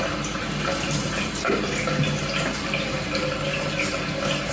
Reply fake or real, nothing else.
real